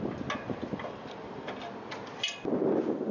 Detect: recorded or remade recorded